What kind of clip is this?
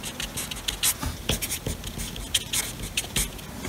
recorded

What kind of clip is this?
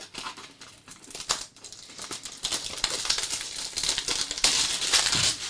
recorded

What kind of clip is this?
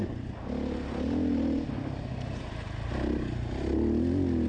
recorded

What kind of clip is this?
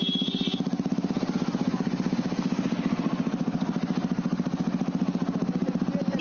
recorded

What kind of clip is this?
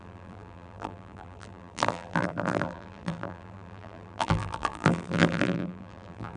remade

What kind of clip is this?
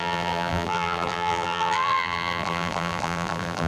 remade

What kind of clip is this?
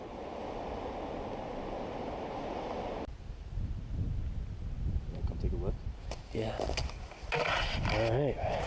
recorded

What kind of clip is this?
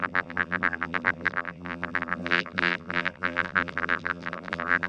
remade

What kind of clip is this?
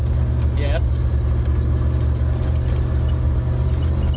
recorded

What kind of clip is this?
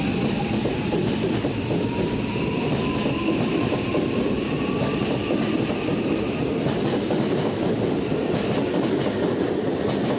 remade